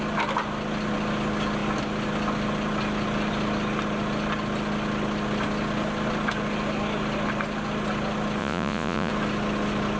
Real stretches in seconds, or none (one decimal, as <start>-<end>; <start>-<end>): 0.0-8.4; 9.1-10.0